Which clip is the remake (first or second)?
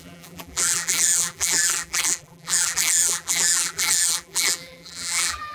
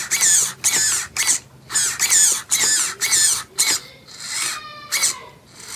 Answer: first